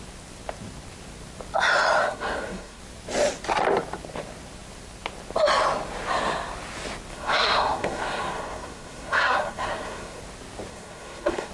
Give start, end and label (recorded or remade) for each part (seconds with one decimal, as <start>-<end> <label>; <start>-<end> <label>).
0.0-2.0 recorded; 2.0-2.8 remade; 2.8-7.1 recorded; 7.1-10.2 remade; 10.2-10.7 recorded; 10.7-11.5 remade